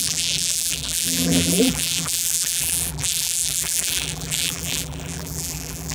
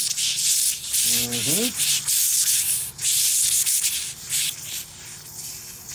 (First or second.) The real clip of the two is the second